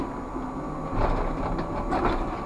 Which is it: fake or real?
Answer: real